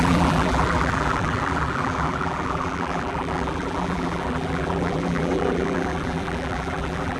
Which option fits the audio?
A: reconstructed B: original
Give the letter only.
A